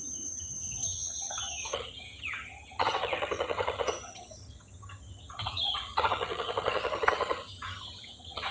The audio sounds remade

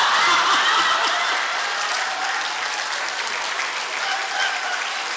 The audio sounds recorded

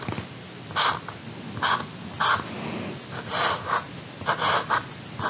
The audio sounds recorded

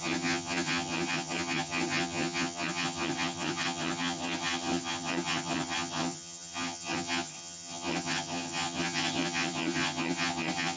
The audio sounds remade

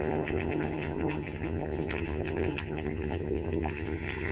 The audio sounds remade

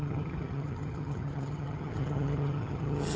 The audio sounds remade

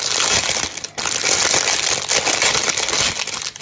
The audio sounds recorded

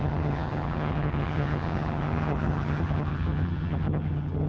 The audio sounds remade